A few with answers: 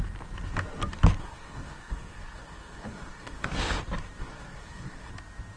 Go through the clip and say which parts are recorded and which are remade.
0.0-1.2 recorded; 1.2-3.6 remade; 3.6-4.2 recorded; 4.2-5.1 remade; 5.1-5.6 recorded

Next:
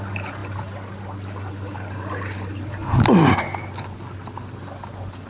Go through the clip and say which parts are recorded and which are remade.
0.0-5.3 recorded

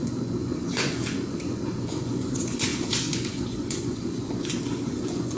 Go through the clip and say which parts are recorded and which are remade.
0.0-5.4 remade

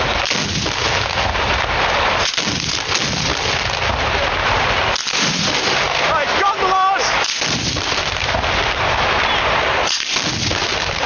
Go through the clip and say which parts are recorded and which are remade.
0.0-4.4 recorded; 4.4-8.3 remade; 8.3-11.1 recorded

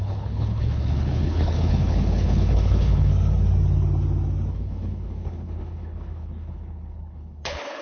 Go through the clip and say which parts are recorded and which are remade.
0.0-3.1 remade; 3.1-4.5 recorded; 4.5-7.8 remade

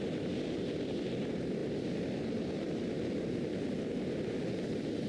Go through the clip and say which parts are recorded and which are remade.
0.0-5.1 recorded

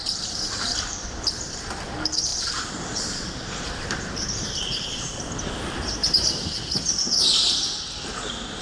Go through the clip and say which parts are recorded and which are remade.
0.0-1.6 remade; 1.6-2.3 recorded; 2.3-6.5 remade; 6.5-8.6 recorded